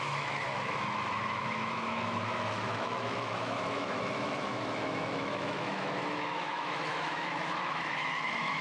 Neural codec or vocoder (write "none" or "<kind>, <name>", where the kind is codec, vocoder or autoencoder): autoencoder, DAC-VAE